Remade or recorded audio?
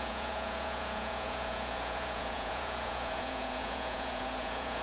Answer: remade